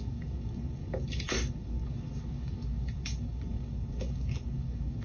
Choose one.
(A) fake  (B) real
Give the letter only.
A